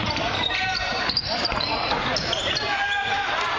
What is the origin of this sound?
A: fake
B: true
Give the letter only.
A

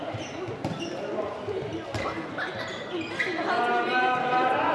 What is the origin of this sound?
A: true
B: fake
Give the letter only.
A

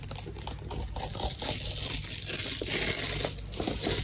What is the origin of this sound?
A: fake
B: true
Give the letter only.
B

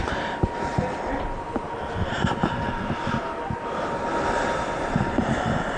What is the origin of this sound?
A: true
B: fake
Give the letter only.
A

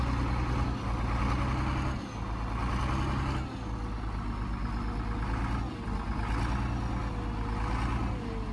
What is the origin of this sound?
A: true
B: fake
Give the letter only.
A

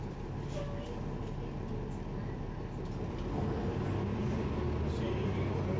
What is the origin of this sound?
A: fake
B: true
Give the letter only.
B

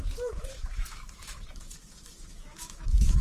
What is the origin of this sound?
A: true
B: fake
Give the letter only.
B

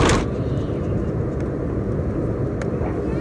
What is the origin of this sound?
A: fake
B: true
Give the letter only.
B